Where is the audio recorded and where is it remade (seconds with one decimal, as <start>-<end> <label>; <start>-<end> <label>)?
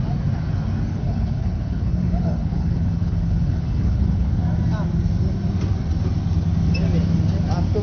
0.0-0.9 recorded; 0.9-4.3 remade; 4.3-7.8 recorded